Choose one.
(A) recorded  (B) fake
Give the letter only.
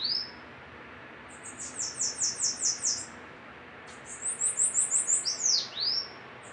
A